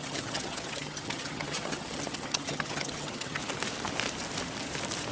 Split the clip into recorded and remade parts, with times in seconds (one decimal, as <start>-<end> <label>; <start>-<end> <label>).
0.0-3.4 remade; 3.4-5.1 recorded